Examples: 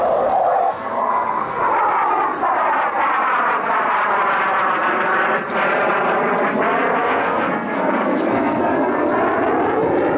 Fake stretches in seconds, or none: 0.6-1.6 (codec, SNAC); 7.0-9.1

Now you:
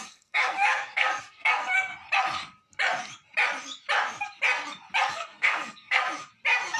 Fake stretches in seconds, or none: 0.0-1.9 (codec, SNAC); 5.1-6.0

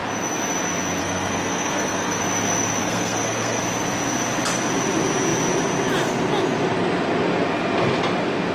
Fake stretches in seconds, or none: 1.0-2.2 (codec, SNAC); 2.8-3.6